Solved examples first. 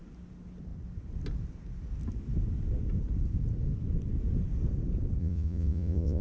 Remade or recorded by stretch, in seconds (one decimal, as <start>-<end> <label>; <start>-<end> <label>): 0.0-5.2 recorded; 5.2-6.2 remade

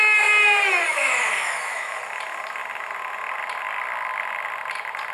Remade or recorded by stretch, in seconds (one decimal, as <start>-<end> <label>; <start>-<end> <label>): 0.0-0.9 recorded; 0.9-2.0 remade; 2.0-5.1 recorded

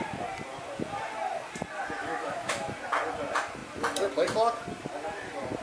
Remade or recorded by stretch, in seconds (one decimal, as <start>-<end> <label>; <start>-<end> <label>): 0.0-2.0 recorded; 2.0-2.7 remade; 2.7-5.6 recorded